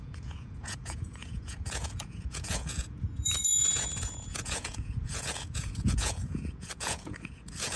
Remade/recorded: remade